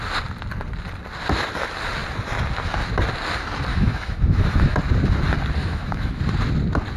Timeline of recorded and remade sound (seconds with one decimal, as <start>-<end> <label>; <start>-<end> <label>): 0.0-3.7 recorded; 3.7-4.8 remade; 4.8-5.6 recorded; 5.6-6.2 remade; 6.2-7.0 recorded